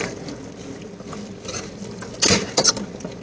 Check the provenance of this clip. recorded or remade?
recorded